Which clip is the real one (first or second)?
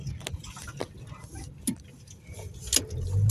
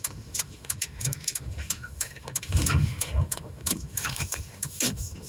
first